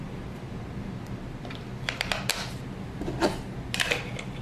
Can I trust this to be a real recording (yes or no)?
yes